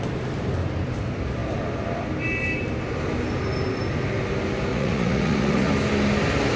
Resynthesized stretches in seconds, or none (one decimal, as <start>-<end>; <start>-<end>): 4.7-5.7